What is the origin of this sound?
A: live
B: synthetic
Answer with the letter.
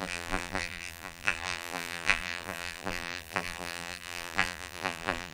B